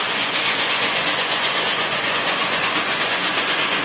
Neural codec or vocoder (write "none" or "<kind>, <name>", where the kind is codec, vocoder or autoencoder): vocoder, Vocos